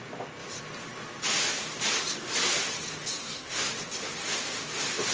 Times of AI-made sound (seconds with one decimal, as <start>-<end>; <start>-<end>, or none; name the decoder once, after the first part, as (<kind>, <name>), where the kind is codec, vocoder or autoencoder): 3.2-3.7 (codec, SNAC)